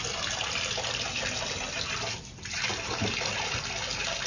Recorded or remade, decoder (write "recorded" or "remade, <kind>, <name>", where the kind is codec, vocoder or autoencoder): recorded